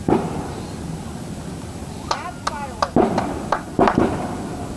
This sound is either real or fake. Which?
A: real